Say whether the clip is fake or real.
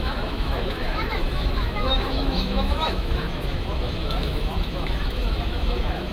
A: fake